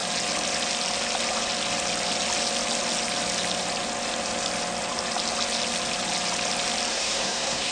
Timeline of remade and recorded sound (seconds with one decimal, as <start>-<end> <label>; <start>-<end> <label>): 0.0-6.9 recorded; 6.9-7.7 remade